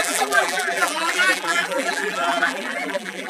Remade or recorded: remade